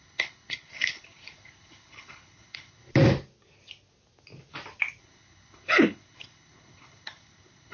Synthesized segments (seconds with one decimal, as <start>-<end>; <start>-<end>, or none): 0.0-2.9; 5.0-7.7